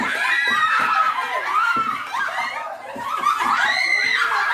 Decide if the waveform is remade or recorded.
recorded